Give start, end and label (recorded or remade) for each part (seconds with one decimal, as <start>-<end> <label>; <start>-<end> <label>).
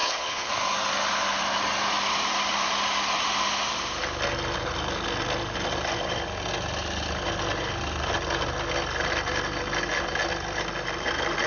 0.0-0.5 remade; 0.5-11.5 recorded